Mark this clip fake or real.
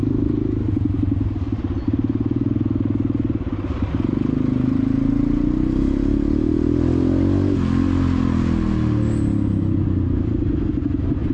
real